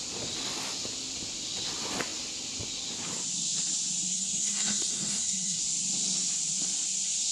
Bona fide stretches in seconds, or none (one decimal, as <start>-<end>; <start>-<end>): 0.0-4.1; 5.6-7.3

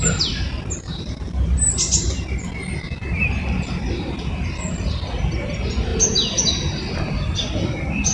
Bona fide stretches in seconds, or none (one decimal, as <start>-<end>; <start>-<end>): 0.0-8.1

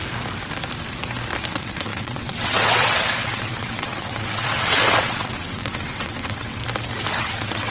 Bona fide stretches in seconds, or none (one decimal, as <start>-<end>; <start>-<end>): 0.0-1.5; 6.6-7.2

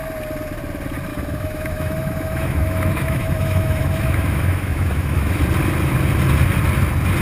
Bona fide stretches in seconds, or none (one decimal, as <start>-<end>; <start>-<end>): 0.0-1.1; 5.4-7.2

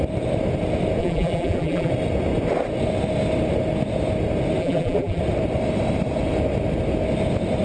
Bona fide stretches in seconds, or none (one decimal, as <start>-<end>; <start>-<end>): 0.0-1.0; 1.9-4.6; 5.2-7.6

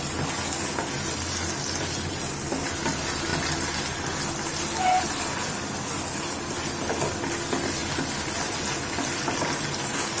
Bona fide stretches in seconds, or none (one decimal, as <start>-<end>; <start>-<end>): 0.0-10.2

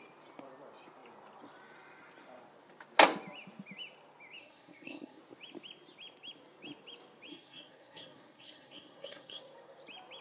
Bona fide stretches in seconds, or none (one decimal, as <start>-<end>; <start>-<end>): 0.0-4.4; 5.2-7.3; 9.4-10.2

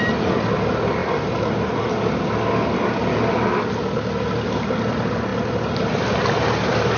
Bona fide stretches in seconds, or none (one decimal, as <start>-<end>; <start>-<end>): 0.0-7.0